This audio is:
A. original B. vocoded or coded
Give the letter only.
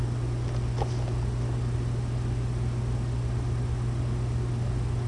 A